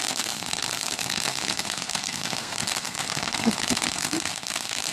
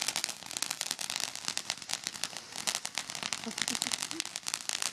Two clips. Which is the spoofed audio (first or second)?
first